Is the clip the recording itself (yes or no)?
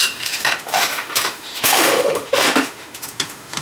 no